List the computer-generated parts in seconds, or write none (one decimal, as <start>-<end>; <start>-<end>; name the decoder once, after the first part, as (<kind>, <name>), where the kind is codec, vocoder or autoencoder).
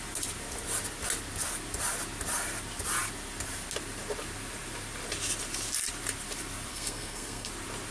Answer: 6.7-7.5 (codec, SNAC)